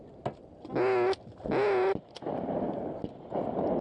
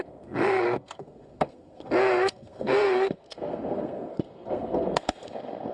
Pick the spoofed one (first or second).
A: second